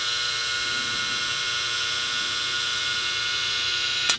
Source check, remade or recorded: remade